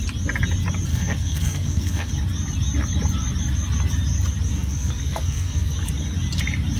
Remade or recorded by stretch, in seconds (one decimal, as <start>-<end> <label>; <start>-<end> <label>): 0.0-0.9 recorded; 0.9-2.1 remade; 2.1-4.5 recorded; 4.5-5.7 remade; 5.7-6.8 recorded